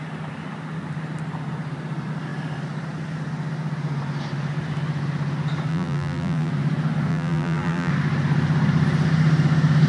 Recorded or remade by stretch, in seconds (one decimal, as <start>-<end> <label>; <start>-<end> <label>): 0.0-5.7 recorded; 5.7-6.5 remade; 6.5-7.1 recorded; 7.1-7.9 remade; 7.9-9.9 recorded

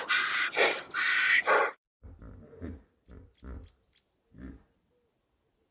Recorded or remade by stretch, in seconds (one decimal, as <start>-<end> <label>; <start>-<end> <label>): 0.0-5.7 recorded

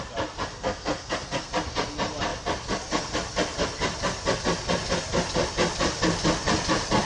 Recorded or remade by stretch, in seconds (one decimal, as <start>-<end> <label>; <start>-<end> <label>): 0.0-0.5 recorded; 0.5-1.5 remade; 1.5-7.1 recorded

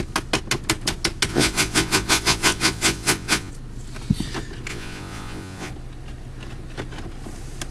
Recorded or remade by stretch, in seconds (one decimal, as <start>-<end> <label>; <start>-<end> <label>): 0.0-1.3 recorded; 1.3-3.5 remade; 3.5-4.7 recorded; 4.7-5.7 remade; 5.7-7.7 recorded

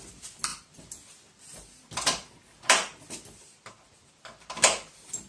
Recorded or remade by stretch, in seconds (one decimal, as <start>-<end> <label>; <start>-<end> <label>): 0.0-5.3 recorded

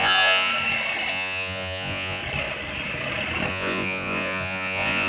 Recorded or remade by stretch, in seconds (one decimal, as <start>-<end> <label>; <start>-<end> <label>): 0.0-0.5 remade; 0.5-1.1 recorded; 1.1-2.2 remade; 2.2-3.5 recorded; 3.5-5.1 remade

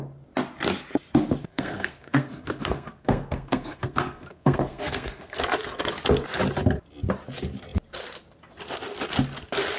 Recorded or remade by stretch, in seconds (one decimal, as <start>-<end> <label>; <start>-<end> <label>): 0.0-1.4 recorded; 1.4-5.4 remade; 5.4-9.8 recorded

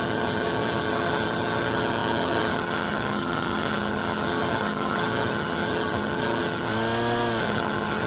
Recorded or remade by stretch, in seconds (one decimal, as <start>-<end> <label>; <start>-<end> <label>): 0.0-6.7 remade; 6.7-7.4 recorded; 7.4-8.1 remade